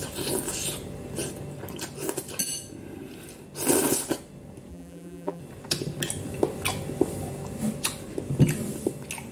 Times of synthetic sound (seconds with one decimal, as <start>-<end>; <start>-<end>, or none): 4.7-5.4